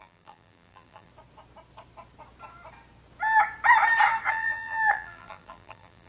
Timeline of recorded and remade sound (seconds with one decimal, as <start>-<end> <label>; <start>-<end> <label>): 0.0-1.1 remade; 1.1-4.3 recorded; 4.3-6.1 remade